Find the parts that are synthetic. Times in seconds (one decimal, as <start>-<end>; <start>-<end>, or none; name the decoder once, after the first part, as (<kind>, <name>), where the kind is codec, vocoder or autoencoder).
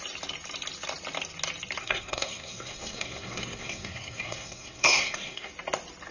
1.8-5.5 (codec, SNAC)